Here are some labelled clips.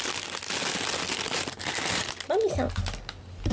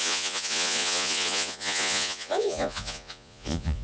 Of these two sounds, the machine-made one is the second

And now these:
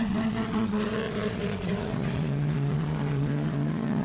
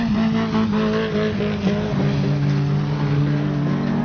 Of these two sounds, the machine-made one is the first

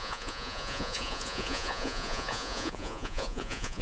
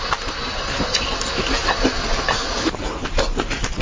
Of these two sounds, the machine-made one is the first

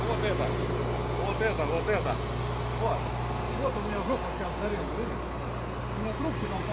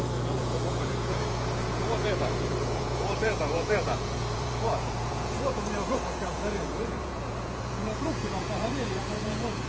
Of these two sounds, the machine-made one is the second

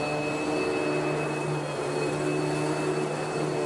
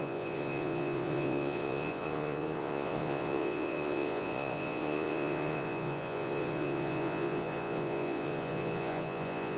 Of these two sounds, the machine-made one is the second